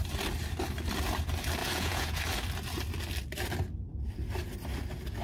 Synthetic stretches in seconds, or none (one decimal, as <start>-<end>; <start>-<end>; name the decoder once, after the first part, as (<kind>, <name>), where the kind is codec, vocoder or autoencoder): 1.6-2.2 (vocoder, Vocos)